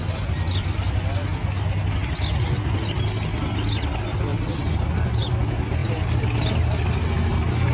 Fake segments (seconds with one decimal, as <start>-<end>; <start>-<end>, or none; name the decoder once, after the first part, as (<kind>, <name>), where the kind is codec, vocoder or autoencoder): 4.3-5.3 (vocoder, BigVGAN v2); 5.8-6.5